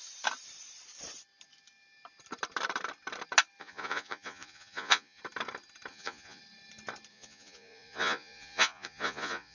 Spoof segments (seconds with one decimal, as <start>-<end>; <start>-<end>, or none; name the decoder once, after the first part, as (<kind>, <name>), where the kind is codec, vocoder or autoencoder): 3.6-5.2 (vocoder, Vocos); 5.9-6.4; 7.1-9.5